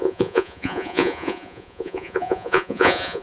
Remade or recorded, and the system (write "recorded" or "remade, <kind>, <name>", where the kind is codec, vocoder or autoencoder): remade, vocoder, Vocos